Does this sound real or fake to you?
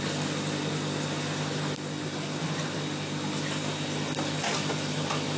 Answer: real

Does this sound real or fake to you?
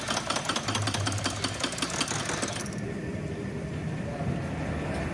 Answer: real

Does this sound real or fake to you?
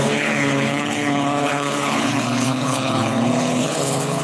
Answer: fake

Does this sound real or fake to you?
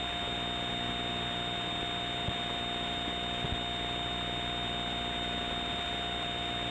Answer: real